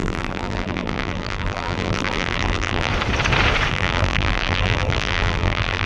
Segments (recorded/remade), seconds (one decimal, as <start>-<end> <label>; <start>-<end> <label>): 0.0-2.9 remade; 2.9-3.7 recorded; 3.7-5.9 remade